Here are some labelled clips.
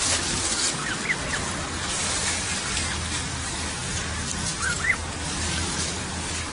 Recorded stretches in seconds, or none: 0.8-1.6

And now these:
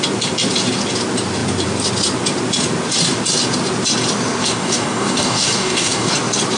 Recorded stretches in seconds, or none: 0.0-4.4; 6.1-6.6

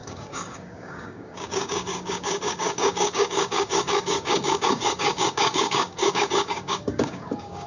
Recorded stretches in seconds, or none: none

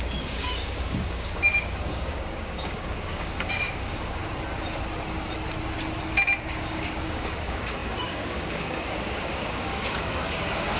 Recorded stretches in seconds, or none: 4.2-6.4

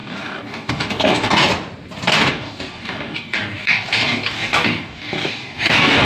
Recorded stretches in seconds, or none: 1.5-2.3

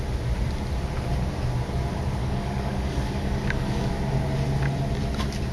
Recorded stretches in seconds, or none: 0.0-2.2; 3.9-5.5

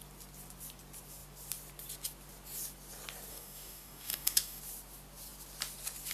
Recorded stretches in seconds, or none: 0.0-3.3; 4.6-6.1

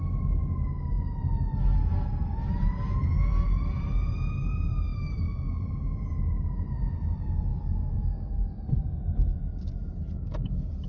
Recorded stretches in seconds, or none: 0.0-4.9; 5.6-7.5; 8.3-10.9